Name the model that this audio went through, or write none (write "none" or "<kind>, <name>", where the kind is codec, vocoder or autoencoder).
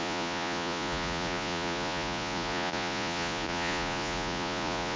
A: vocoder, Vocos